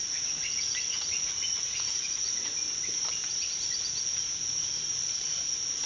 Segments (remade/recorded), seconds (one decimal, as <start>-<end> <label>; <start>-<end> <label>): 0.0-0.9 recorded; 0.9-2.5 remade; 2.5-5.9 recorded